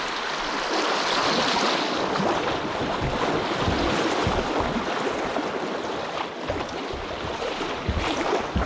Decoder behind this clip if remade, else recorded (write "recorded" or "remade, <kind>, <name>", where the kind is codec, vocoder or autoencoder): recorded